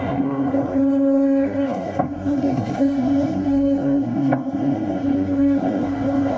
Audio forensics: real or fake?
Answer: fake